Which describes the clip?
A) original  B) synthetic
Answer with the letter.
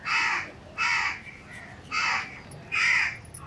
A